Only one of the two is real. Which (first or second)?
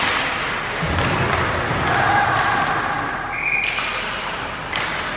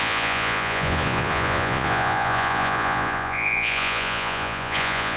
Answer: first